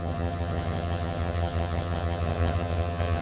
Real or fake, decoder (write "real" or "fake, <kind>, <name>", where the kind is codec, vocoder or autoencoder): fake, vocoder, HiFi-GAN